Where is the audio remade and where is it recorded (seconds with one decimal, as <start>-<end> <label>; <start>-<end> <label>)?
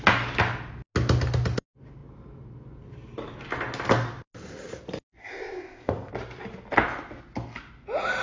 0.0-5.2 recorded; 5.2-6.1 remade; 6.1-8.2 recorded